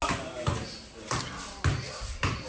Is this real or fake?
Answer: real